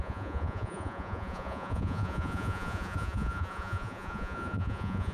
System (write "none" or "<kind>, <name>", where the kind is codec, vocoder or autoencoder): vocoder, Vocos